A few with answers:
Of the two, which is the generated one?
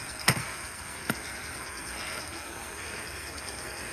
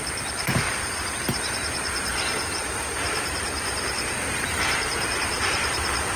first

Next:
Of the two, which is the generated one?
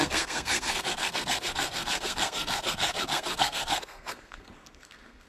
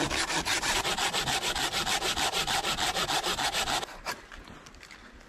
first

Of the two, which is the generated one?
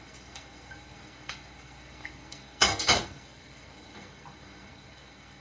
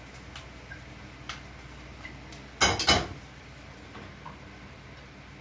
first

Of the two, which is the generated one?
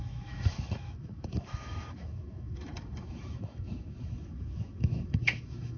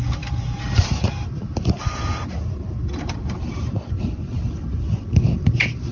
first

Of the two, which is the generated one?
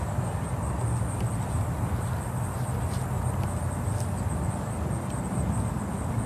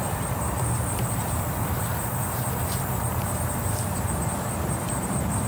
second